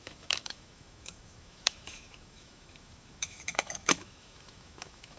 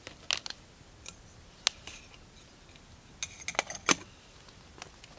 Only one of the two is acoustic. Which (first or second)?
second